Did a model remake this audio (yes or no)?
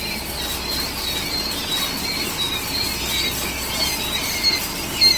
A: no